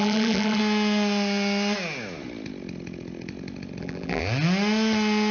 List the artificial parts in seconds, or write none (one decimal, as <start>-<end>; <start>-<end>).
0.0-0.6; 3.8-4.2